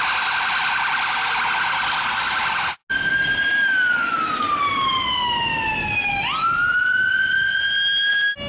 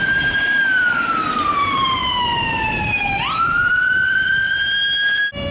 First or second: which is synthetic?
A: second